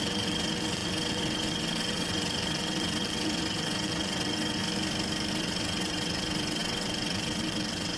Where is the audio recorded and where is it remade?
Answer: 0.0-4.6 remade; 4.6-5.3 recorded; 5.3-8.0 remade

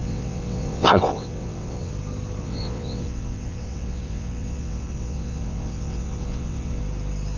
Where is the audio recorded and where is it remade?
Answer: 0.0-1.9 remade; 1.9-2.4 recorded; 2.4-6.8 remade; 6.8-7.4 recorded

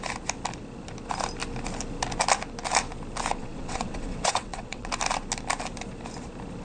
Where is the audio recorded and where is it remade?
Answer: 0.0-3.4 recorded; 3.4-4.9 remade; 4.9-6.6 recorded

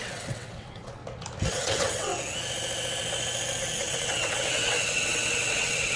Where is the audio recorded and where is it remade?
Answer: 0.0-1.0 remade; 1.0-1.5 recorded; 1.5-2.1 remade; 2.1-3.8 recorded; 3.8-6.0 remade